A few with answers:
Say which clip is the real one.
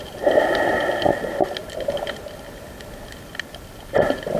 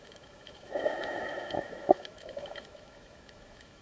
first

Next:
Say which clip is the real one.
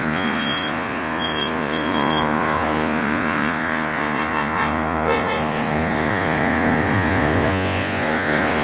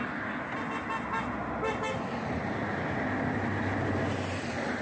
second